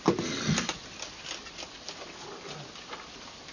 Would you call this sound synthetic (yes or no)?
no